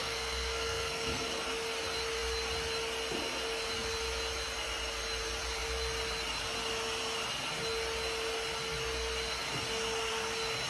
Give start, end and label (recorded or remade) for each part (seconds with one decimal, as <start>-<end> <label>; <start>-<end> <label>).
0.0-1.3 remade; 1.3-10.7 recorded

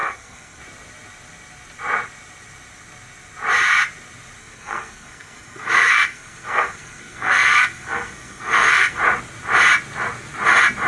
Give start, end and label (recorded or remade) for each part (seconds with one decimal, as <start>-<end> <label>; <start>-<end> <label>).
0.0-0.6 remade; 0.6-4.4 recorded; 4.4-9.0 remade; 9.0-10.9 recorded